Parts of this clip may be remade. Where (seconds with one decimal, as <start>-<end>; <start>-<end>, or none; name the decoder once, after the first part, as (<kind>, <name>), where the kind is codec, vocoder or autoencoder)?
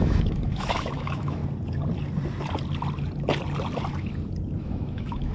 0.0-1.4 (autoencoder, DAC-VAE); 4.6-5.3